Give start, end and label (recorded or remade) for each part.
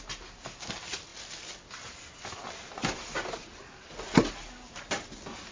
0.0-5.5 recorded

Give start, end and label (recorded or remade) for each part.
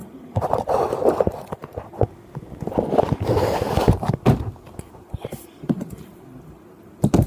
0.0-0.7 remade; 0.7-7.3 recorded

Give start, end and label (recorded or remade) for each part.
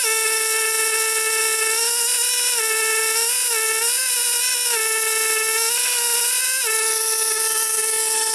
0.0-8.3 recorded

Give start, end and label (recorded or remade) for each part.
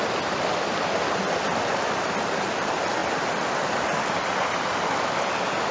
0.0-5.7 recorded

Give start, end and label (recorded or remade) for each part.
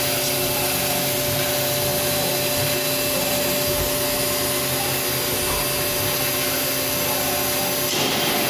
0.0-8.5 recorded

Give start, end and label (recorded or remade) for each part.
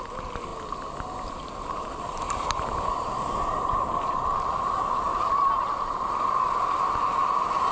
0.0-0.5 remade; 0.5-1.3 recorded; 1.3-5.1 remade; 5.1-7.7 recorded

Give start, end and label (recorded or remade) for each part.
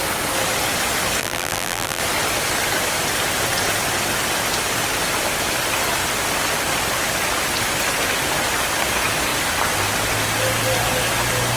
0.0-1.2 recorded; 1.2-2.0 remade; 2.0-11.6 recorded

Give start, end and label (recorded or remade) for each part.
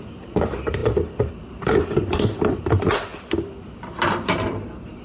0.0-3.1 recorded; 3.1-5.0 remade